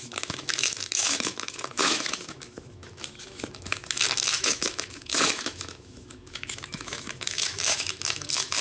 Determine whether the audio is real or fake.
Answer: fake